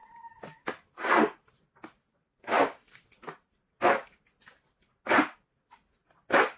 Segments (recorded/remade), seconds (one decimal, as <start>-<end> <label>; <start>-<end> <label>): 0.0-6.6 recorded